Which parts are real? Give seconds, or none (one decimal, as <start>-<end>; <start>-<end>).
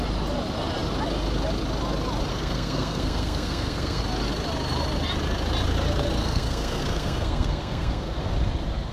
0.0-2.3; 4.0-6.2; 8.3-8.9